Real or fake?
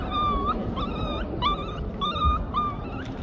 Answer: fake